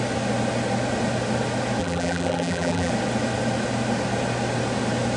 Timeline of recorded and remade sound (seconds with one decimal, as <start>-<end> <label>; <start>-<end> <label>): 0.0-1.8 recorded; 1.8-2.9 remade; 2.9-5.2 recorded